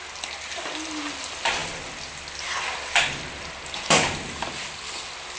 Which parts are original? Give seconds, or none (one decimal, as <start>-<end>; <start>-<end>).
0.0-5.4